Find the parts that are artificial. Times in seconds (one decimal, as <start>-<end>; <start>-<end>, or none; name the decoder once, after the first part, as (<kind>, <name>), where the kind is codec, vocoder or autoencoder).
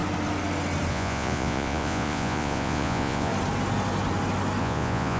0.9-3.3 (vocoder, Vocos); 4.6-5.2